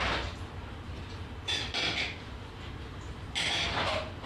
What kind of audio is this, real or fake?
real